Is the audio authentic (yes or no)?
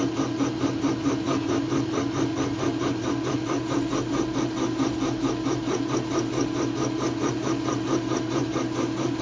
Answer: yes